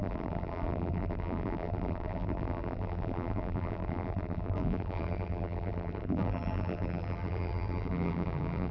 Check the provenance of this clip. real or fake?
fake